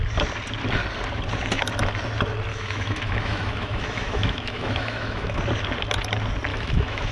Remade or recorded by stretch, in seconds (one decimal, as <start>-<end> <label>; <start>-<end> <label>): 0.0-2.5 recorded; 2.5-5.4 remade; 5.4-6.5 recorded; 6.5-7.1 remade